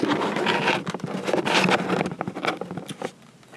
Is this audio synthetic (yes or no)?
no